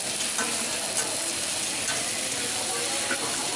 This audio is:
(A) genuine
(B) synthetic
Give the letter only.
A